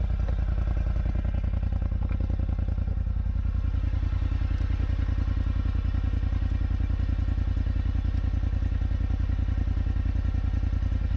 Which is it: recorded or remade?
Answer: recorded